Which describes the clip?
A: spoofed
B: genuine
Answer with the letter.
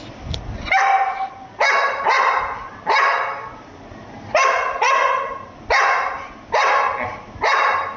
B